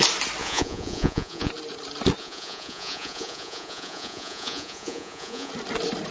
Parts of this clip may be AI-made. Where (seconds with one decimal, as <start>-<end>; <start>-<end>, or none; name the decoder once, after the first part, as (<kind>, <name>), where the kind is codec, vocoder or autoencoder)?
0.4-1.5 (vocoder, Vocos); 2.2-5.5